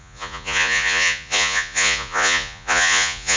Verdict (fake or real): fake